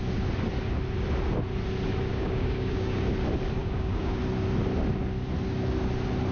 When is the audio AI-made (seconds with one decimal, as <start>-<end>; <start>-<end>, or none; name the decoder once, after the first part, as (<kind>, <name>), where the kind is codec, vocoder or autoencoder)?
2.1-3.0 (codec, DAC); 3.6-4.2